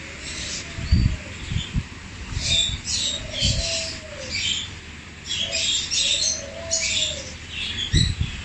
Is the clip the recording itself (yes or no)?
yes